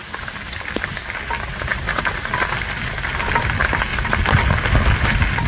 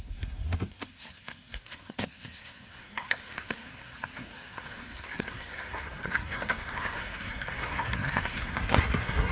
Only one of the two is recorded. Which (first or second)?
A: first